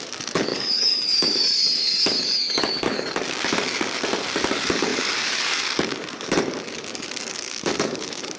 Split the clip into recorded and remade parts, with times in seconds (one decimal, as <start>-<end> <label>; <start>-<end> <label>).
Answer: 0.0-8.4 remade